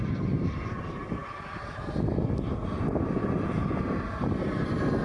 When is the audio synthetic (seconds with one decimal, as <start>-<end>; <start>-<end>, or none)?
none